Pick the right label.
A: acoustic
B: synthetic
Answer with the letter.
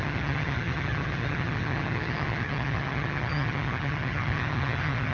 B